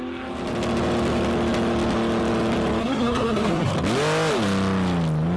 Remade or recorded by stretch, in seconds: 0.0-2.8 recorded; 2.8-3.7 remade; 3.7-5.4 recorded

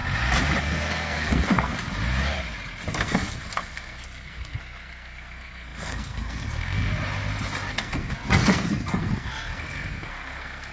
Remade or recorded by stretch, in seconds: 0.0-0.6 recorded; 0.6-1.7 remade; 1.7-2.9 recorded; 2.9-6.9 remade; 6.9-7.7 recorded; 7.7-10.7 remade

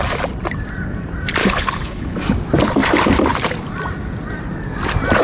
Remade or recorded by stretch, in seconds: 0.0-1.4 recorded; 1.4-2.2 remade; 2.2-5.2 recorded

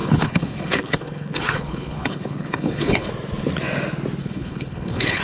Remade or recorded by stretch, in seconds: 0.0-3.1 remade; 3.1-4.2 recorded; 4.2-5.2 remade

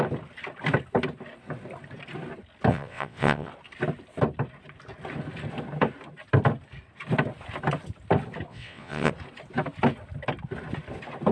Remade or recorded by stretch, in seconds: 0.0-2.7 recorded; 2.7-3.5 remade; 3.5-8.5 recorded; 8.5-9.1 remade; 9.1-11.3 recorded

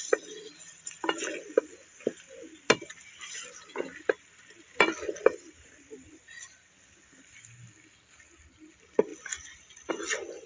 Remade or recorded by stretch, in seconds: 0.0-10.5 recorded